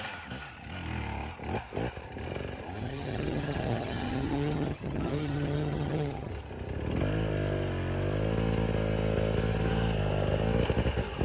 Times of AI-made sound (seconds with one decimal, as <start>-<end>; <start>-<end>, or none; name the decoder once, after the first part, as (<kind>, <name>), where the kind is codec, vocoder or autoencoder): 2.8-6.3 (vocoder, HiFi-GAN)